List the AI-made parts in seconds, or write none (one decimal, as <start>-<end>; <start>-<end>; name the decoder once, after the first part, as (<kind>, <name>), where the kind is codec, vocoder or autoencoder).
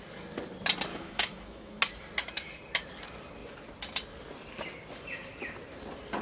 0.9-1.8 (autoencoder, DAC-VAE)